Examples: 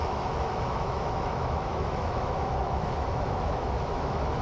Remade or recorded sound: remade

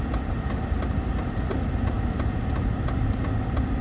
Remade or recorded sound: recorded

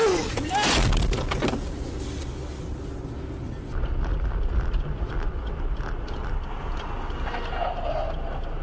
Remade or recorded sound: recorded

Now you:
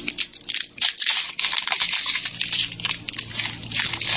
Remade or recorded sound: recorded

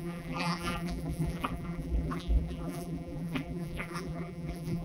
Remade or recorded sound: remade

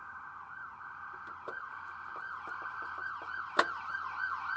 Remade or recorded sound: recorded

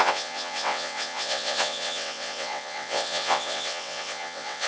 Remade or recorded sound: remade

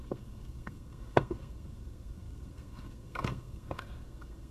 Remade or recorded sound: remade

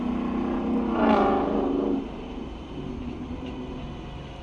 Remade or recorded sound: recorded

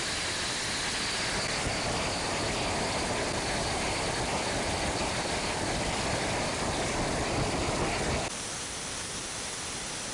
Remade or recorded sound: recorded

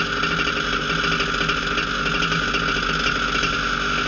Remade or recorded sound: recorded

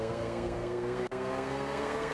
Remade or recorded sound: remade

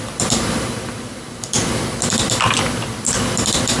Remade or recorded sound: remade